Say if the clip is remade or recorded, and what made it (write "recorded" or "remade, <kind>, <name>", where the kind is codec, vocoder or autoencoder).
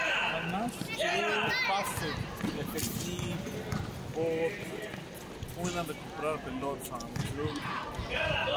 recorded